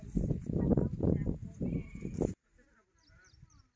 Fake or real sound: real